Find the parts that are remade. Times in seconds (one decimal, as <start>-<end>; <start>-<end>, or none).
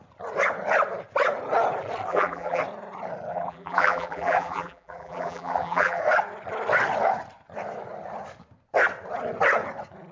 2.1-2.6; 3.3-6.0